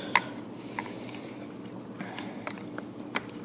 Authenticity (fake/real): real